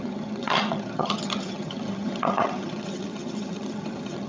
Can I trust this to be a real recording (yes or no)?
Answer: no